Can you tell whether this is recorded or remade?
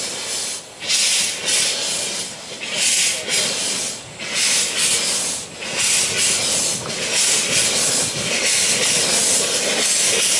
recorded